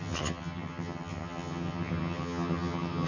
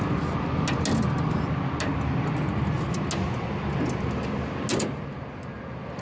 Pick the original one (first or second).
second